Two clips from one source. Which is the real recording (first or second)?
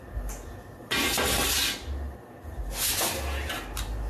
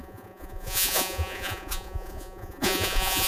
first